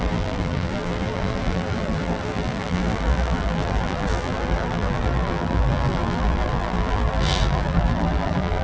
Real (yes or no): no